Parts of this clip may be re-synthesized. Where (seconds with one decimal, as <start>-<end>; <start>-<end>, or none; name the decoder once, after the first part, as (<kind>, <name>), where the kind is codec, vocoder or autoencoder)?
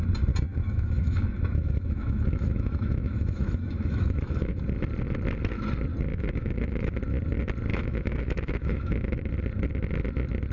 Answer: 0.5-4.5 (autoencoder, DAC-VAE); 6.1-6.9; 7.7-9.3